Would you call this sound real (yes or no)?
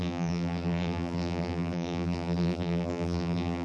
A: no